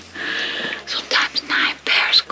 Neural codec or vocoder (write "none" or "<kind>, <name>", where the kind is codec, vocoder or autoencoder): none